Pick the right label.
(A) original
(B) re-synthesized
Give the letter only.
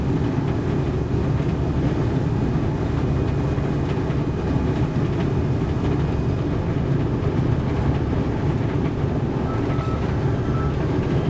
A